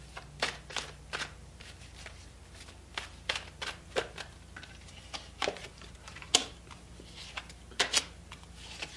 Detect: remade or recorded recorded